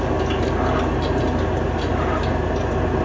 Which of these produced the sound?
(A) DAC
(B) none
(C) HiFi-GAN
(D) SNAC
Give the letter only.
B